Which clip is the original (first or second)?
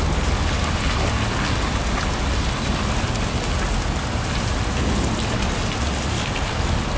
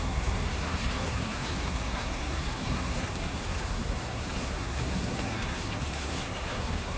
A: first